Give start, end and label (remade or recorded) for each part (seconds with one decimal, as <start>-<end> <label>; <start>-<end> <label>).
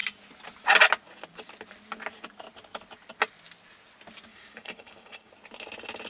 0.0-4.3 recorded; 4.3-5.3 remade; 5.3-6.1 recorded